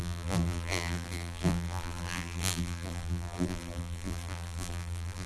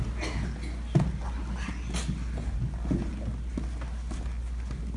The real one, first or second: second